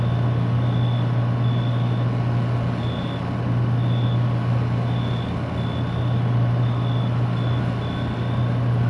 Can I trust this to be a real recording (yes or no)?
yes